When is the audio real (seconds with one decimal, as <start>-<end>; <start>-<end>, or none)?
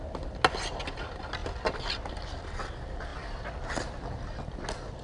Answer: 0.0-5.0